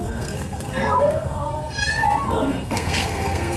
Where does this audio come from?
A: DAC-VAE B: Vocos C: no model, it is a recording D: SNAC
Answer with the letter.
D